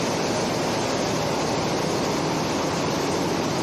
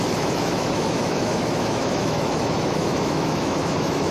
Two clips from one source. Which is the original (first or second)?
first